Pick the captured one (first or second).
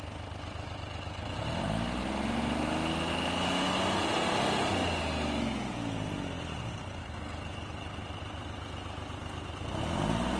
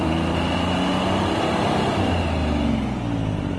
first